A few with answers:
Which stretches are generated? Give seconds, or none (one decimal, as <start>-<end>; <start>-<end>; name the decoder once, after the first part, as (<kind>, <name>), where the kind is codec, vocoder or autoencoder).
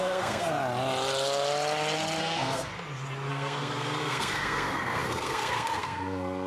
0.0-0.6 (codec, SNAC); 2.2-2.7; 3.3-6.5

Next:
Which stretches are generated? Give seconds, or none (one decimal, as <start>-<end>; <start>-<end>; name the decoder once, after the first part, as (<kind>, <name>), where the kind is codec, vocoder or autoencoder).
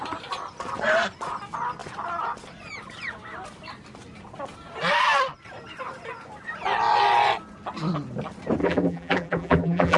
8.6-10.0 (vocoder, BigVGAN v2)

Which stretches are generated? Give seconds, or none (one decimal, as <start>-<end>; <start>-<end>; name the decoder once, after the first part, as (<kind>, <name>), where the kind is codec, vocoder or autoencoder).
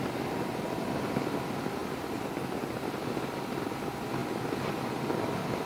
none